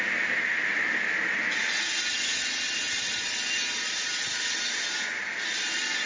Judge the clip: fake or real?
real